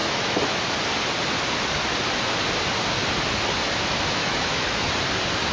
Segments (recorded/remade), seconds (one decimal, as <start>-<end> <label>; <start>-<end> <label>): 0.0-0.6 remade; 0.6-4.2 recorded; 4.2-4.9 remade; 4.9-5.5 recorded